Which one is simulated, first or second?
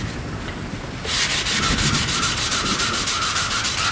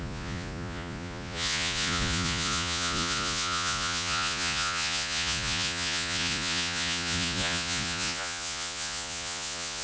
second